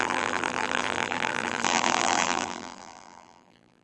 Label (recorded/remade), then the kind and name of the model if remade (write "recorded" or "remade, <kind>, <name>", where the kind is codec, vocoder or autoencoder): remade, vocoder, BigVGAN v2